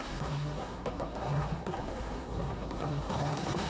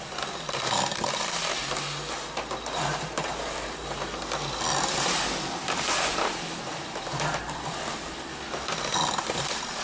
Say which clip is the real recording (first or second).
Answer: second